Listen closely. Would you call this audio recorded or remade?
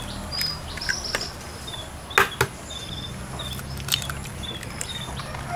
recorded